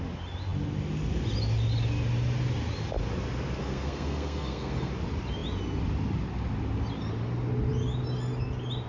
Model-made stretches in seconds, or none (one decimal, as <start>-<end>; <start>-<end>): 3.6-4.9

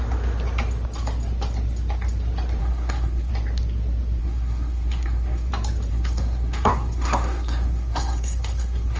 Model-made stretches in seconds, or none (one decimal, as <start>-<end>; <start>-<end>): 2.6-3.3; 4.2-5.5; 5.9-9.0

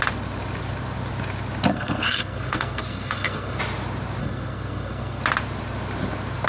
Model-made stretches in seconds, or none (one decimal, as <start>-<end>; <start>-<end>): 1.7-3.6; 4.2-5.2